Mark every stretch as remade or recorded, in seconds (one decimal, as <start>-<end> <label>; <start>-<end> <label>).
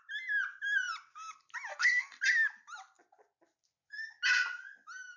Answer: 0.0-1.7 recorded; 1.7-2.2 remade; 2.2-5.2 recorded